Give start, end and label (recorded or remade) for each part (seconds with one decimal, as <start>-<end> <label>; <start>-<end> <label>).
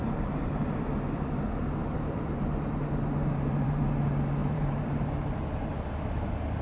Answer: 0.0-0.6 remade; 0.6-1.8 recorded; 1.8-3.9 remade; 3.9-4.4 recorded; 4.4-5.1 remade; 5.1-6.6 recorded